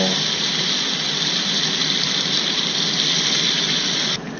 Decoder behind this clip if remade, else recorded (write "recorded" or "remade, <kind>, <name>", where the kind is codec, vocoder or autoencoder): recorded